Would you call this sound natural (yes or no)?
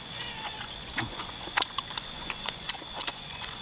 no